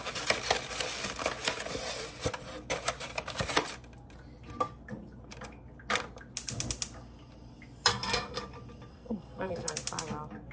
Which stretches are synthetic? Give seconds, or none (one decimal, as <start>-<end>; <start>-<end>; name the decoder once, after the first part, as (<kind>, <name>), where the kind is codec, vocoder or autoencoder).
7.9-8.4 (codec, SNAC); 8.9-9.7